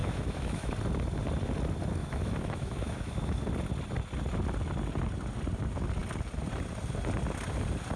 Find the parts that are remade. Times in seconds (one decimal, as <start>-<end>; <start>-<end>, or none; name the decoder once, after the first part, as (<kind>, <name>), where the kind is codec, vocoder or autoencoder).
0.0-0.7 (autoencoder, DAC-VAE); 2.0-3.4

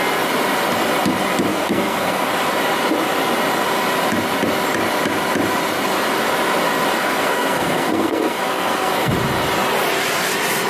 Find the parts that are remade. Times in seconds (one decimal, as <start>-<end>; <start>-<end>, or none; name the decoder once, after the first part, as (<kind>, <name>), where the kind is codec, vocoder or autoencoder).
1.5-2.3 (codec, SNAC); 7.0-9.1

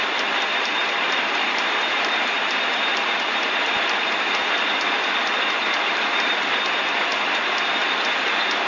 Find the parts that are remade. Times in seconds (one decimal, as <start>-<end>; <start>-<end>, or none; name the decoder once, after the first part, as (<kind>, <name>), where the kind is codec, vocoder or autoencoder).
0.8-4.3 (vocoder, BigVGAN v2); 5.6-6.6

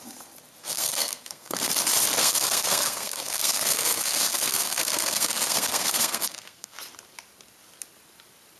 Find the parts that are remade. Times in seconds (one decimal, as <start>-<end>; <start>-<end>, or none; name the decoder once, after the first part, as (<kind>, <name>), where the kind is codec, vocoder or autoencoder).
0.6-1.7 (codec, SNAC); 2.2-6.8

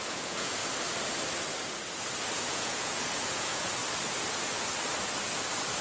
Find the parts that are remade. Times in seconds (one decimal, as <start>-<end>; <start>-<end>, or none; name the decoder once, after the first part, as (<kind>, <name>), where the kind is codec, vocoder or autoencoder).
0.0-0.6 (vocoder, Vocos); 2.2-3.8

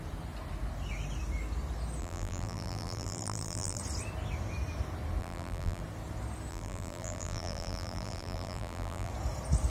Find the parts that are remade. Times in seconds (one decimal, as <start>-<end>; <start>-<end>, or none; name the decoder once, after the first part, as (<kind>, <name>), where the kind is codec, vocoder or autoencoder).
2.0-3.8 (vocoder, BigVGAN v2); 5.2-5.8; 6.5-9.1

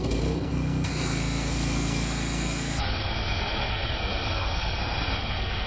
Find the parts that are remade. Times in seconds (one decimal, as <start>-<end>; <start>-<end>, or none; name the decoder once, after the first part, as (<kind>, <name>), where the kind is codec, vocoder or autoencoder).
0.0-4.8 (codec, SNAC); 5.3-5.7

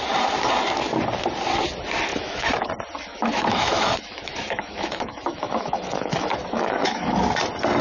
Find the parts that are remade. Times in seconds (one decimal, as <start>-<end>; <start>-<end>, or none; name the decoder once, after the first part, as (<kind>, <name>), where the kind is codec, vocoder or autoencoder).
2.1-2.7 (autoencoder, DAC-VAE); 3.1-7.2